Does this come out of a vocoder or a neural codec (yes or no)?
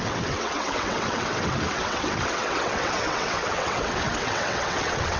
yes